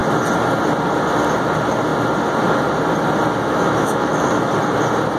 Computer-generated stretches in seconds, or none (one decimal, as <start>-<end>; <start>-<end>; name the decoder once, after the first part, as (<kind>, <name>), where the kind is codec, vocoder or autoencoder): 3.4-4.5 (autoencoder, DAC-VAE)